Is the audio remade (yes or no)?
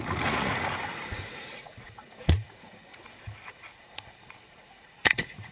yes